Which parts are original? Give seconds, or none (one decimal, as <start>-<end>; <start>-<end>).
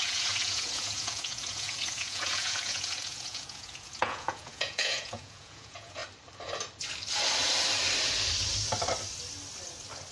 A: 6.0-10.1